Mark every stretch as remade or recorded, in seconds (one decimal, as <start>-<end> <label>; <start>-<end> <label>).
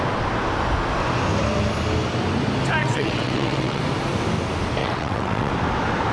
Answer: 0.0-2.8 recorded; 2.8-3.8 remade; 3.8-4.8 recorded; 4.8-5.5 remade; 5.5-6.1 recorded